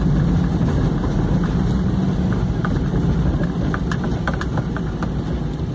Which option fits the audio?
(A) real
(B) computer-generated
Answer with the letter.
A